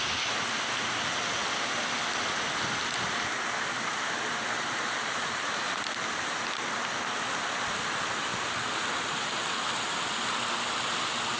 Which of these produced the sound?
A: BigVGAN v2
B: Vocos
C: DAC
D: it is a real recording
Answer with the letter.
D